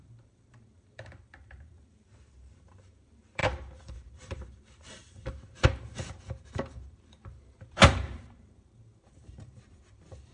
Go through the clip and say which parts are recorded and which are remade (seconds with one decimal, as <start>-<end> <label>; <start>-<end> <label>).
0.0-10.3 remade